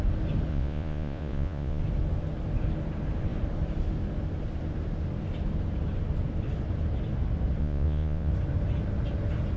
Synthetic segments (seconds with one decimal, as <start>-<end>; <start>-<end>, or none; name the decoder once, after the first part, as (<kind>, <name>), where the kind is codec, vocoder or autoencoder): 0.5-1.8 (vocoder, Vocos); 7.6-8.3